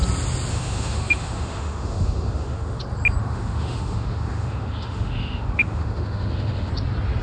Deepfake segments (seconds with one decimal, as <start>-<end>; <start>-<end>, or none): 0.5-2.8; 3.2-6.7